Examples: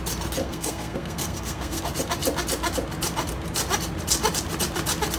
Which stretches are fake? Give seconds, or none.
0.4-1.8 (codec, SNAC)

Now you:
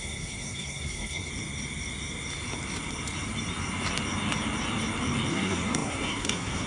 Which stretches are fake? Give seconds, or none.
0.0-1.3 (codec, SNAC); 5.3-6.7